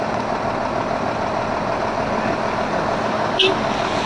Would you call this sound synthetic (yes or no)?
no